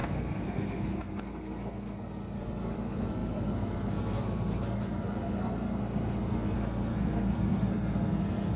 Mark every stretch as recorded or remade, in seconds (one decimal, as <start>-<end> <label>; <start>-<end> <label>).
0.0-8.6 remade